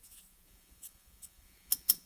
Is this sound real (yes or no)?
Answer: no